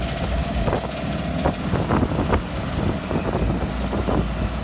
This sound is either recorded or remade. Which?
recorded